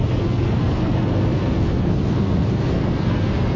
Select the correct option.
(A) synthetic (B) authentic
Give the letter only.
A